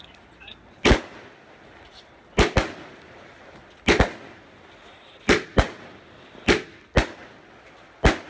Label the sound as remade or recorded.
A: recorded